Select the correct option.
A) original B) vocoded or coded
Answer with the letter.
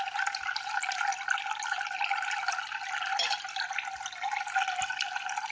A